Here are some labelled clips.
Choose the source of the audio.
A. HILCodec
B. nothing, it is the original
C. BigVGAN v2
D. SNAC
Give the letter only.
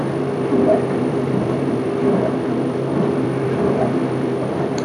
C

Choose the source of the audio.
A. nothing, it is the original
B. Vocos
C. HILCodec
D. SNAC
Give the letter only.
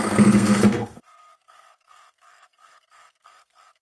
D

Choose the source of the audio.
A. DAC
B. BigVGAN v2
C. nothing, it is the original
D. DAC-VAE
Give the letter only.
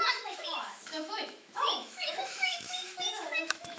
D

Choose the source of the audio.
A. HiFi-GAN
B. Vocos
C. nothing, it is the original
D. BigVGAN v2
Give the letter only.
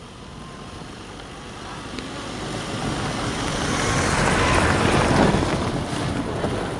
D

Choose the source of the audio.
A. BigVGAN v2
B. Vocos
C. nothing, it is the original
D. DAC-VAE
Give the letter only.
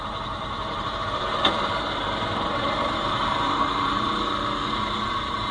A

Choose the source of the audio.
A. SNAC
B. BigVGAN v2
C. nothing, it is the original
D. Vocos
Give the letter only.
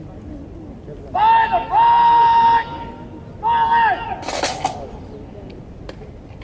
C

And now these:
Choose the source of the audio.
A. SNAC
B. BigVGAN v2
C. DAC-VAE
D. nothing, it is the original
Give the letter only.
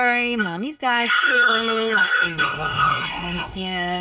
A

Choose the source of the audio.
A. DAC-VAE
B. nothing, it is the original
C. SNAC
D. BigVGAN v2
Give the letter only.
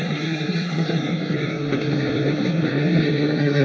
C